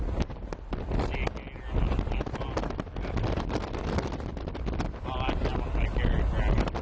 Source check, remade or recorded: recorded